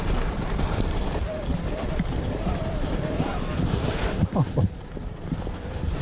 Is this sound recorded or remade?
recorded